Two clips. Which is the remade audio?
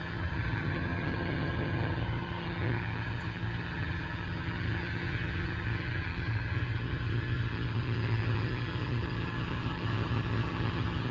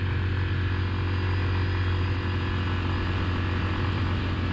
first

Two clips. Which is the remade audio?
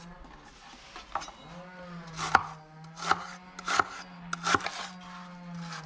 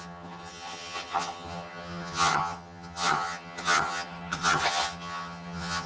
second